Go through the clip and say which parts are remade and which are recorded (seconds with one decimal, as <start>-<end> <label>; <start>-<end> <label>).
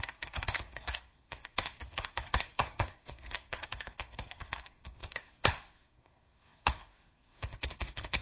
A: 0.0-8.2 remade